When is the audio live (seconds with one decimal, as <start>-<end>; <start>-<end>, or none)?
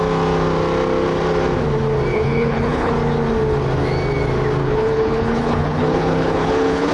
0.0-2.1; 2.9-4.6